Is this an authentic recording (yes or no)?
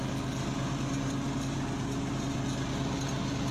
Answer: yes